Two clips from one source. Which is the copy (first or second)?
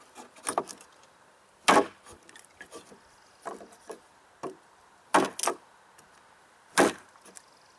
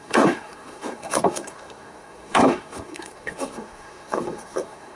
second